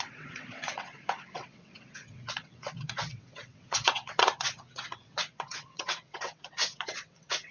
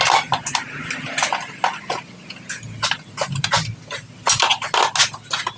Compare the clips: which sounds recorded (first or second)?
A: second